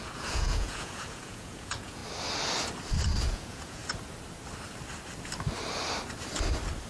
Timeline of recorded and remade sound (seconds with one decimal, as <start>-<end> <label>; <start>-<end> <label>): 0.0-2.0 remade; 2.0-3.2 recorded; 3.2-3.8 remade; 3.8-6.9 recorded